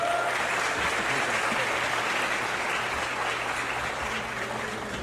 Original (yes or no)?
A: yes